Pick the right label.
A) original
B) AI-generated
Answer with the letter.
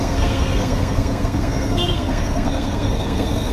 B